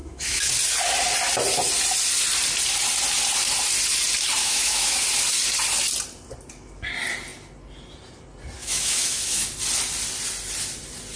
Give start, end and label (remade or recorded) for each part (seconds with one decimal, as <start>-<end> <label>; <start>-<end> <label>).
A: 0.0-0.5 remade; 0.5-4.4 recorded; 4.4-5.0 remade; 5.0-8.6 recorded; 8.6-9.5 remade; 9.5-11.2 recorded